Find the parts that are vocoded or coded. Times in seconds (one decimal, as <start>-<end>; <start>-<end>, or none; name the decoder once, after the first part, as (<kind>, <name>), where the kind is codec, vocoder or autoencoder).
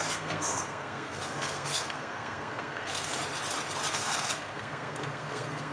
0.0-3.2 (codec, SNAC); 3.9-5.7